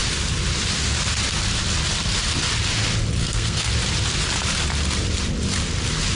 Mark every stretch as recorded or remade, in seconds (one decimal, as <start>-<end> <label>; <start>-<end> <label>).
0.0-3.2 recorded; 3.2-3.7 remade; 3.7-6.1 recorded